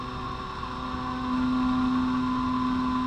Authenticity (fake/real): real